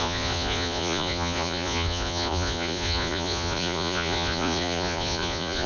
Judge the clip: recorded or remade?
remade